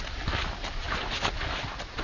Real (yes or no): yes